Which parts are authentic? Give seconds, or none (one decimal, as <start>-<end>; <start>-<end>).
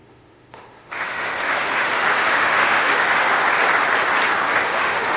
3.4-4.5